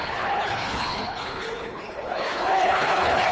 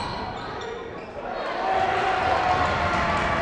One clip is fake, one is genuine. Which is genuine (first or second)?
second